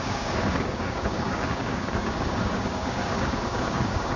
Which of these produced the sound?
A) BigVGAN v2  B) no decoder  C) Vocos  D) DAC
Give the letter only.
D